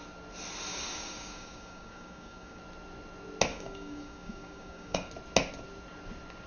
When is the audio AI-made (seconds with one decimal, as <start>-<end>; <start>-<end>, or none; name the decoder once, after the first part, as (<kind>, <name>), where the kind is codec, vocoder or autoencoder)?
0.7-2.6 (codec, DAC); 3.5-5.1